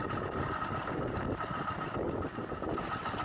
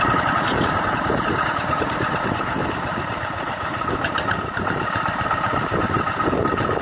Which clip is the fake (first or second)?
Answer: second